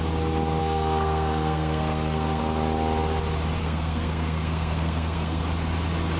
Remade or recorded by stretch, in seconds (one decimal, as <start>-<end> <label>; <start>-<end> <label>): 0.0-0.6 recorded; 0.6-2.4 remade; 2.4-3.6 recorded; 3.6-5.4 remade; 5.4-6.2 recorded